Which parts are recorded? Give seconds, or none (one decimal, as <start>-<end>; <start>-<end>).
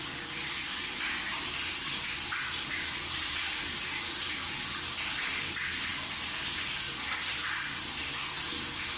none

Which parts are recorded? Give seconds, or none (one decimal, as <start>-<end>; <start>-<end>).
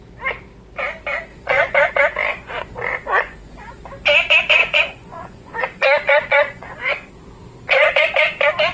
0.0-1.3; 1.9-2.3; 3.8-4.6; 7.1-8.7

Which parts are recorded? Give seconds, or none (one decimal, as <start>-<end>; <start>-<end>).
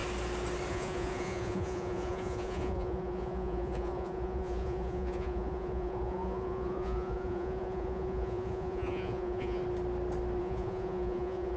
0.0-0.7; 9.6-10.4